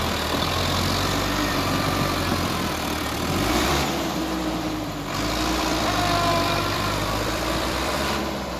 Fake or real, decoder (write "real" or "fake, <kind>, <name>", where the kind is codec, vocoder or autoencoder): fake, vocoder, BigVGAN v2